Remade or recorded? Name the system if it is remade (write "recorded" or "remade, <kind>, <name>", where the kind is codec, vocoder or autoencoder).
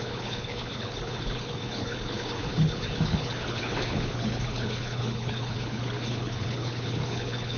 remade, codec, HILCodec